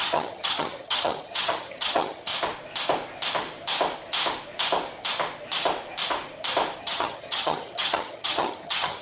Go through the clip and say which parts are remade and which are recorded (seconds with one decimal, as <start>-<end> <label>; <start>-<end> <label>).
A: 0.0-2.3 remade; 2.3-6.8 recorded; 6.8-9.0 remade

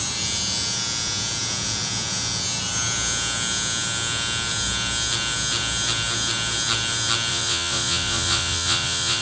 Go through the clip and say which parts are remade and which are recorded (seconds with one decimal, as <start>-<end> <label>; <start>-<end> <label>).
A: 0.0-7.3 recorded; 7.3-9.2 remade

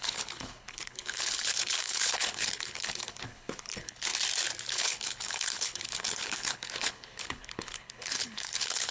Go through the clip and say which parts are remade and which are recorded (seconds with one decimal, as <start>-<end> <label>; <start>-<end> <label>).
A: 0.0-4.1 remade; 4.1-4.7 recorded; 4.7-8.9 remade

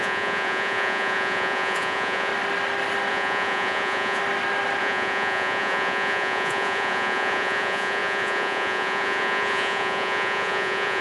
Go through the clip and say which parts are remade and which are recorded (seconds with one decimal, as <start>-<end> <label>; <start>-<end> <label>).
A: 0.0-2.3 remade; 2.3-3.1 recorded; 3.1-4.2 remade; 4.2-4.8 recorded; 4.8-11.0 remade

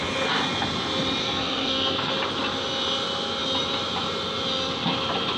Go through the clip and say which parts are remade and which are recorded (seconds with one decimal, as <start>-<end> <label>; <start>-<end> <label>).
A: 0.0-1.2 recorded; 1.2-2.1 remade; 2.1-5.4 recorded

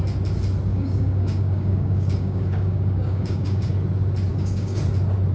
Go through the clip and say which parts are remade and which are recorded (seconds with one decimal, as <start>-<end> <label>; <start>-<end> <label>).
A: 0.0-0.7 recorded; 0.7-3.7 remade; 3.7-4.3 recorded; 4.3-4.8 remade; 4.8-5.3 recorded